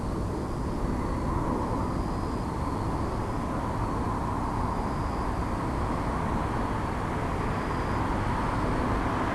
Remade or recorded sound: recorded